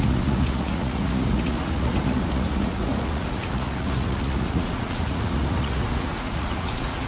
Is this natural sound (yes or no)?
no